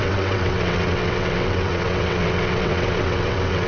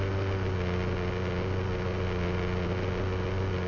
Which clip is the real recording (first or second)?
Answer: second